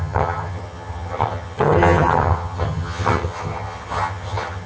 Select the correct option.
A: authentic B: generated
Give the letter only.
B